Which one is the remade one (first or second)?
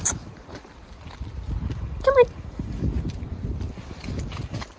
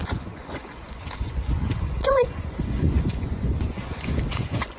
second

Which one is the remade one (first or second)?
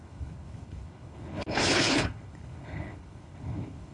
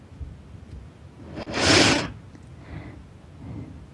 first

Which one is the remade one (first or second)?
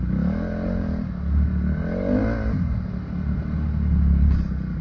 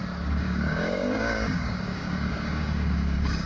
second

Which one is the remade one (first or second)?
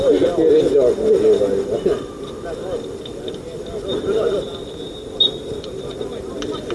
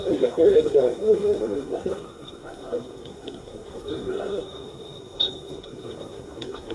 second